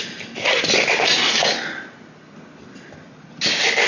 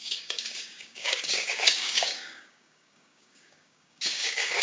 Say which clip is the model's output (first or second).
second